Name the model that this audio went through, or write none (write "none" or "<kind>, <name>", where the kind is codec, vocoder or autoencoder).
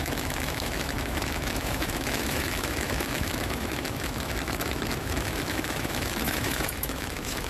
autoencoder, DAC-VAE